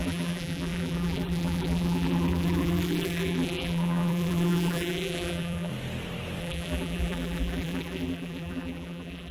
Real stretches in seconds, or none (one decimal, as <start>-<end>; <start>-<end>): 5.7-6.4